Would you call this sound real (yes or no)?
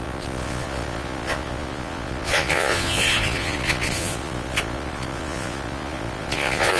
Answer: no